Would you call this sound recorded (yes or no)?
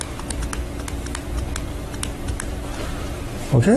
yes